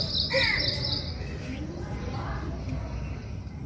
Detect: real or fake real